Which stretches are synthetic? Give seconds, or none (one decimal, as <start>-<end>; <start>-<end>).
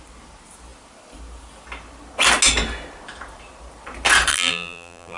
4.3-5.2